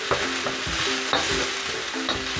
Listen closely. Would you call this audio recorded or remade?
recorded